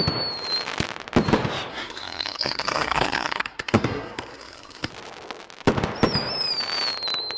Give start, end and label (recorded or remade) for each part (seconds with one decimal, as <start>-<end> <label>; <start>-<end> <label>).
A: 0.0-1.7 recorded; 1.7-4.9 remade; 4.9-7.4 recorded